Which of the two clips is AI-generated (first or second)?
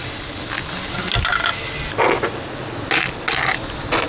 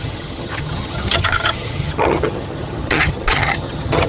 second